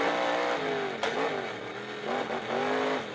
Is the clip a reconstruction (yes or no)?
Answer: no